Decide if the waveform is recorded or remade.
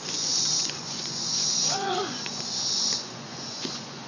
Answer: remade